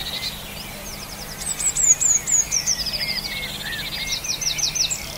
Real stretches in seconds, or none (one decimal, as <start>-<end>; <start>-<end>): 0.0-5.2